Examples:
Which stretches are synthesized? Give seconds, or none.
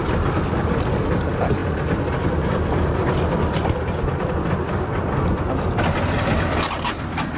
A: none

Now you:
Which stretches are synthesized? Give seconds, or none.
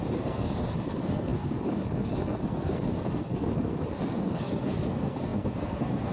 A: 0.0-6.1 (codec, SNAC)